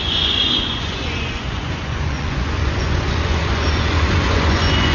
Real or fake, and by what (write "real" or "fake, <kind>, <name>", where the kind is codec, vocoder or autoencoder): fake, vocoder, Vocos